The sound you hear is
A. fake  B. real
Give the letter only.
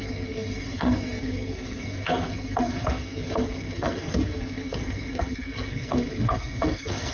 A